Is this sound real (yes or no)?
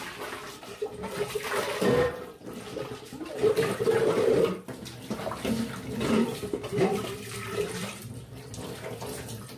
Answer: no